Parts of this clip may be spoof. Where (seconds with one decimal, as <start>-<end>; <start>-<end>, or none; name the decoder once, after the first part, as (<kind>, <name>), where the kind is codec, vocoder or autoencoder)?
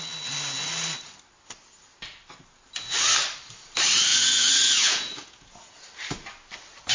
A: 4.1-5.8 (vocoder, Vocos)